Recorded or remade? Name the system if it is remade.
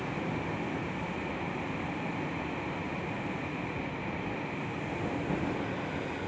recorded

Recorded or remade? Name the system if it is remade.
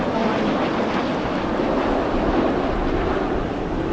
recorded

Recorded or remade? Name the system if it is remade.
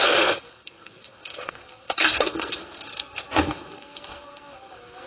remade, codec, SNAC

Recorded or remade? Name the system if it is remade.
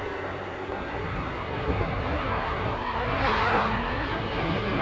remade, codec, SNAC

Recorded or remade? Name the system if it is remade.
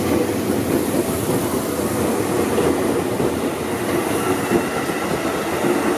recorded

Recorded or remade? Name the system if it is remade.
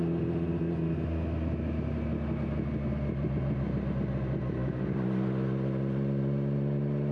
recorded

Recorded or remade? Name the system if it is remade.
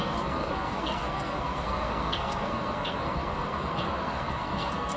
remade, codec, SNAC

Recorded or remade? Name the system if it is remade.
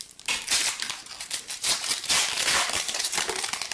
remade, vocoder, BigVGAN v2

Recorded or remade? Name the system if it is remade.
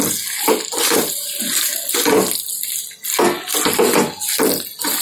recorded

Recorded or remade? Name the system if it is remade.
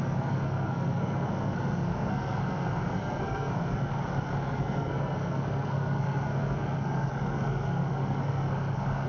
remade, codec, SNAC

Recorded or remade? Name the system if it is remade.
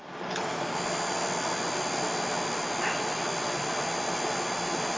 recorded